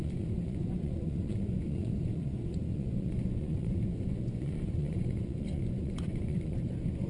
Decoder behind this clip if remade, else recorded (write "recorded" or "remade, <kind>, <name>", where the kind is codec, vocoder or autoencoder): remade, vocoder, Vocos